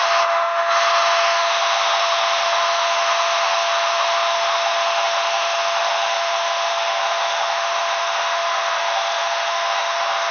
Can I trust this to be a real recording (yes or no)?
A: no